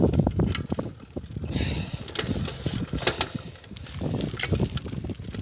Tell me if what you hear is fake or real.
real